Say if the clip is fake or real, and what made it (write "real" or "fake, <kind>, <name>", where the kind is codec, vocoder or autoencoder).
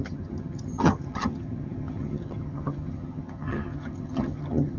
fake, vocoder, HiFi-GAN